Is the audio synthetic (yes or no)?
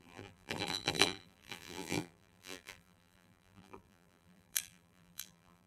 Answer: yes